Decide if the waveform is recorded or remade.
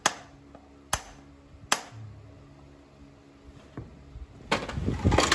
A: recorded